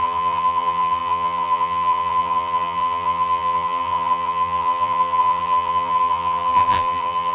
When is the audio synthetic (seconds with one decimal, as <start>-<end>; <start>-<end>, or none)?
0.0-7.3